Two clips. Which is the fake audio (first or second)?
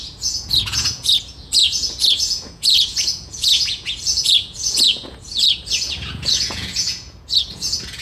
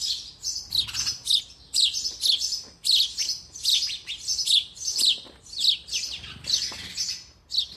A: first